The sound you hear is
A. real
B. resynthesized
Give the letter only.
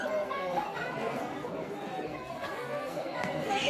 B